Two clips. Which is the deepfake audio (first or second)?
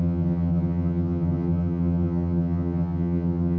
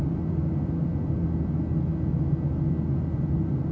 first